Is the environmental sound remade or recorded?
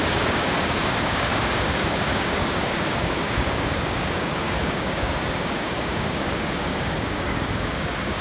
remade